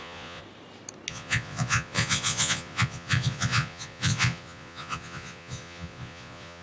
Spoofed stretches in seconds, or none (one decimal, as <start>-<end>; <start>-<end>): 0.0-0.4; 1.1-6.6